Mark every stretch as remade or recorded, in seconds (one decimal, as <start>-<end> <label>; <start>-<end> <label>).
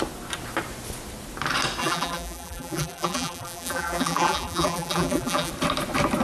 0.0-1.8 recorded; 1.8-5.5 remade; 5.5-6.2 recorded